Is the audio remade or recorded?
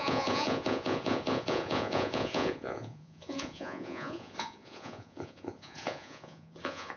remade